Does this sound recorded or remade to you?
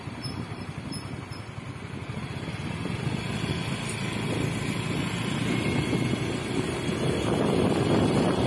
recorded